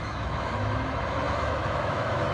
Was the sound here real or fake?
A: fake